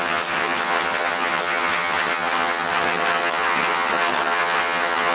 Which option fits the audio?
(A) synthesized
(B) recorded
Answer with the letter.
A